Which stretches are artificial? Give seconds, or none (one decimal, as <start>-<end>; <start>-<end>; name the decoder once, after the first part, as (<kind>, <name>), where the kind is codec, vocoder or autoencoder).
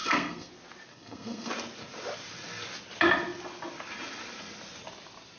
0.0-0.5 (codec, SNAC); 0.9-1.5